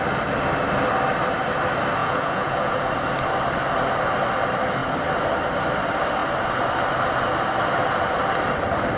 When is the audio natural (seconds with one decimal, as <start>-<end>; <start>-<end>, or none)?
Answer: 0.0-2.0; 2.8-9.0